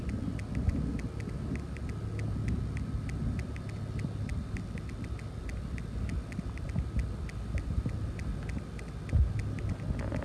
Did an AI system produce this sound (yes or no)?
no